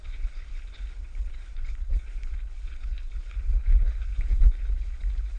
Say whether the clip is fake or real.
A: fake